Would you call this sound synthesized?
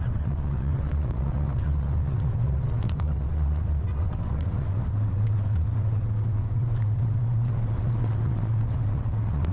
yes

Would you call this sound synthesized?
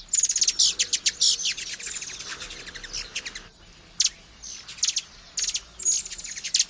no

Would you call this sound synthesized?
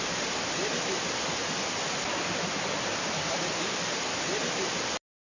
no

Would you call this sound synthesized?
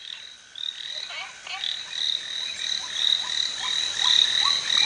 no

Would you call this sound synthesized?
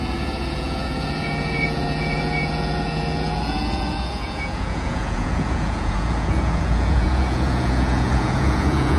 yes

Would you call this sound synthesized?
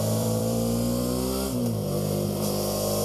yes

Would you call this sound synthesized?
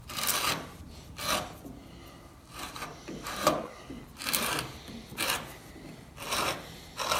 no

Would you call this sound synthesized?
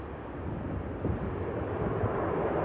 no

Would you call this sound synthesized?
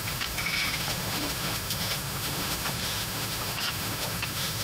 yes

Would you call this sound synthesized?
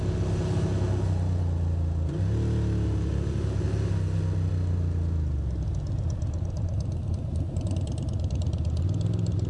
no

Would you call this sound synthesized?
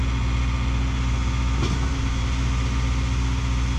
no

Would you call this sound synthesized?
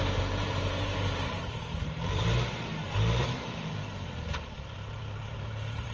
yes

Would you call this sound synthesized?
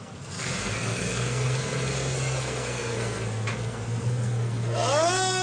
yes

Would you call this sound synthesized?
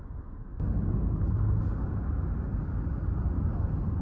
no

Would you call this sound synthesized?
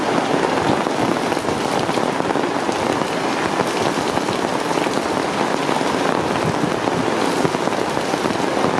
no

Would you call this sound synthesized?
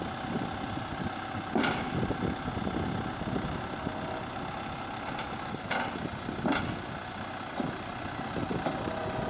no